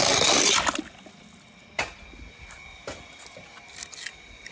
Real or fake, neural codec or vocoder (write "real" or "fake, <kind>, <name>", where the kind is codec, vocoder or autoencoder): real